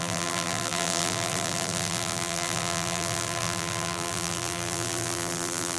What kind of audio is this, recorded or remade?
remade